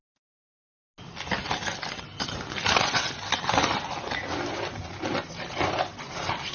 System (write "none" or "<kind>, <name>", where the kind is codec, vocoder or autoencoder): none